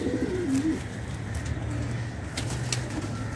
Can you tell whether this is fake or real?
real